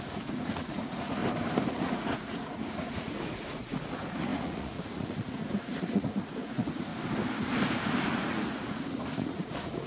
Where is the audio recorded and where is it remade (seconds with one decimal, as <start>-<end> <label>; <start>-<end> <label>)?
0.0-1.2 remade; 1.2-1.7 recorded; 1.7-6.9 remade; 6.9-8.2 recorded; 8.2-9.9 remade